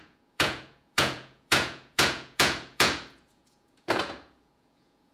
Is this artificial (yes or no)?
yes